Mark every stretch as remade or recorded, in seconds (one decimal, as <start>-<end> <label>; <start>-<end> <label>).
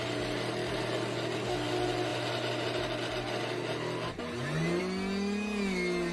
0.0-6.1 recorded